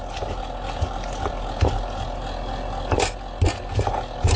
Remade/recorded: recorded